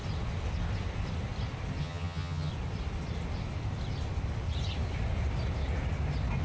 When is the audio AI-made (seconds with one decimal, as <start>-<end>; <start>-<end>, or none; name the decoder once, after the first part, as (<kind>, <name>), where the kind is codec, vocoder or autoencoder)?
1.8-2.5 (vocoder, HiFi-GAN)